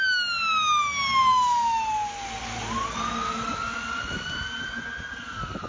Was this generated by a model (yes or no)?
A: no